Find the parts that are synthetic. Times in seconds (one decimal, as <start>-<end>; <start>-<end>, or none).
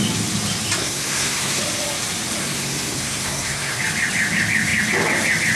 0.8-1.6; 2.4-3.8